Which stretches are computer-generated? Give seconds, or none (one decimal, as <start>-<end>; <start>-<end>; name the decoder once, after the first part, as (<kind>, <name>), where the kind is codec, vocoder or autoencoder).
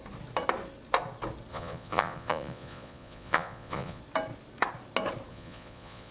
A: 1.5-4.0 (vocoder, Vocos); 5.3-6.1